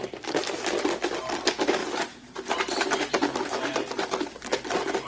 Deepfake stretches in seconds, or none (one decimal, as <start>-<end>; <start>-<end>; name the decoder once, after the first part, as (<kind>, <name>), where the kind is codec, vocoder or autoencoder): none